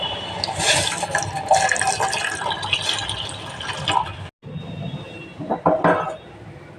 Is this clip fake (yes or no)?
no